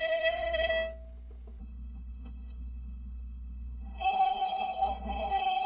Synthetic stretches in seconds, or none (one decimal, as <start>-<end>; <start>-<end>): 0.0-0.7; 1.6-5.7